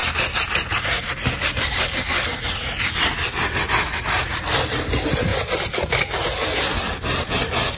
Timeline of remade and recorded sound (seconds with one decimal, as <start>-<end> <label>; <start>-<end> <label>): 0.0-7.8 recorded